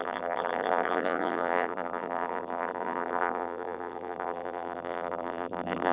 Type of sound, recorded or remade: remade